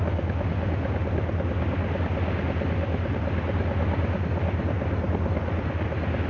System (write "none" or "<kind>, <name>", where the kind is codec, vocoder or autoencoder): none